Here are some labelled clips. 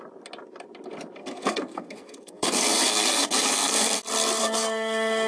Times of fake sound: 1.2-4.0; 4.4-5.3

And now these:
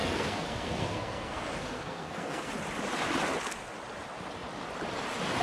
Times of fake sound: 0.0-2.5

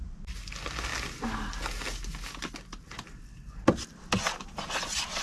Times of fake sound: none

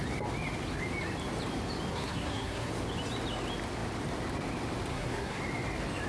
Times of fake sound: 1.9-2.7; 4.9-5.4

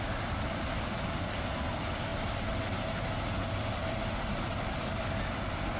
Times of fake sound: none